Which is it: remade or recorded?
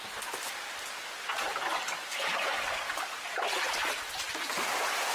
recorded